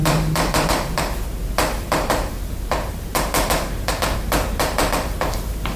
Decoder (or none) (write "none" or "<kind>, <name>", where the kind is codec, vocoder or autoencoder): vocoder, BigVGAN v2